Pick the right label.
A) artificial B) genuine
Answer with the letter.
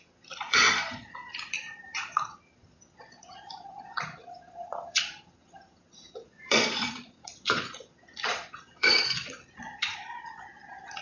A